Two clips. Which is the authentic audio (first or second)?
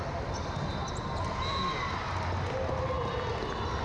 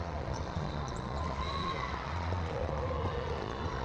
first